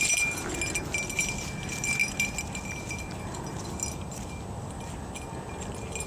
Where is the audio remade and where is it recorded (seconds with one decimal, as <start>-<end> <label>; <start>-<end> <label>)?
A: 0.0-6.1 recorded